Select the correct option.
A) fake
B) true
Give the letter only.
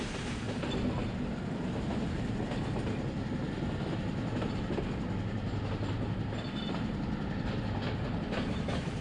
B